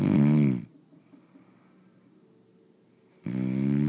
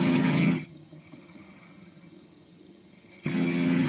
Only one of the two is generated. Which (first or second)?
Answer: second